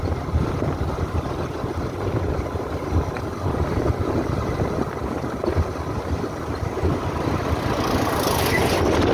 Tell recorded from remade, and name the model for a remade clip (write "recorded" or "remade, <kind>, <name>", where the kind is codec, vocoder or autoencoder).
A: remade, vocoder, BigVGAN v2